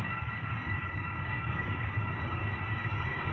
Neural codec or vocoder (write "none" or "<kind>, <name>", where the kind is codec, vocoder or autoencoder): codec, DAC